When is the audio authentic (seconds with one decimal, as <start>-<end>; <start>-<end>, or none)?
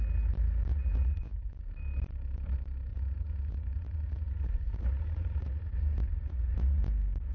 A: 0.0-0.7; 1.5-2.9; 6.8-7.3